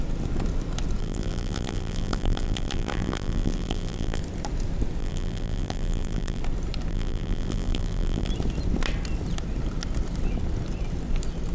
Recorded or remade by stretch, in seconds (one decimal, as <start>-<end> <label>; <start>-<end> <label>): 0.0-1.0 recorded; 1.0-4.2 remade; 4.2-5.0 recorded; 5.0-6.4 remade; 6.4-6.9 recorded; 6.9-8.3 remade; 8.3-11.5 recorded

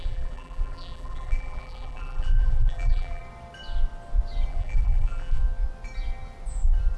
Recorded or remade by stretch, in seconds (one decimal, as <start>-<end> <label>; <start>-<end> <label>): 0.0-3.2 remade; 3.2-4.5 recorded; 4.5-5.4 remade; 5.4-7.0 recorded

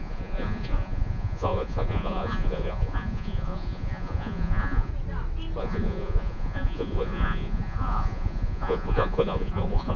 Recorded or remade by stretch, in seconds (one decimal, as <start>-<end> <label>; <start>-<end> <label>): 0.0-4.9 remade; 4.9-5.6 recorded; 5.6-10.0 remade

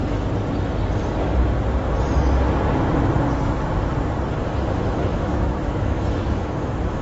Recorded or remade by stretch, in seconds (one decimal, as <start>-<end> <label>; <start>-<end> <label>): 0.0-5.1 recorded; 5.1-7.0 remade

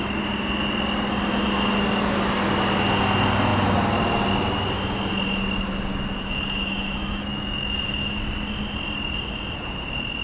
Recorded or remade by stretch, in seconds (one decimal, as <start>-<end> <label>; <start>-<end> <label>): 0.0-5.9 recorded; 5.9-8.2 remade; 8.2-10.2 recorded

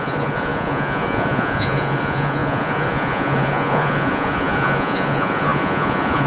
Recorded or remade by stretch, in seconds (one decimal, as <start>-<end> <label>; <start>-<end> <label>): 0.0-6.3 remade

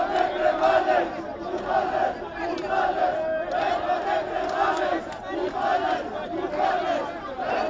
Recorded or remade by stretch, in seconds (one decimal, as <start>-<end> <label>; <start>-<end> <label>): 0.0-7.7 recorded